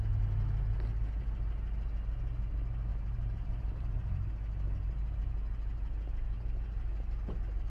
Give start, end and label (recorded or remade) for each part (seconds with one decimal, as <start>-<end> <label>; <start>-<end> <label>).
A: 0.0-2.9 recorded; 2.9-4.3 remade; 4.3-7.7 recorded